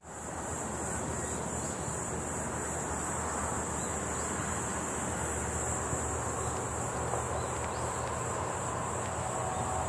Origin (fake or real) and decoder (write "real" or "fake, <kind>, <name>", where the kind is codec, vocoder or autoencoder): real